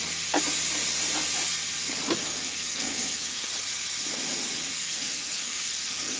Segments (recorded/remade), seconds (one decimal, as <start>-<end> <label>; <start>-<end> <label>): 0.0-2.4 recorded; 2.4-3.5 remade; 3.5-4.8 recorded; 4.8-6.2 remade